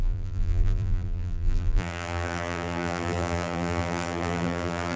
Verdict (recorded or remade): remade